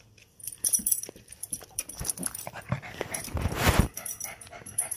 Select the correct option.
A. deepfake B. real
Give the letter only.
A